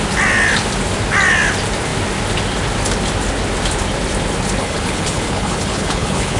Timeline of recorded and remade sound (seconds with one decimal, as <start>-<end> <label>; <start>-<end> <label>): 0.0-4.6 recorded; 4.6-6.4 remade